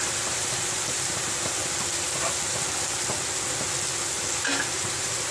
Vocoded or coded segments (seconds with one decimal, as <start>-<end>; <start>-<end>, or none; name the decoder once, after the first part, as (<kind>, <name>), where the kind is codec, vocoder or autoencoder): 0.0-1.6 (vocoder, BigVGAN v2); 4.8-5.3